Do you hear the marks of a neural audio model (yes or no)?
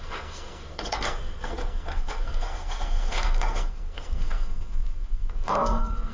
yes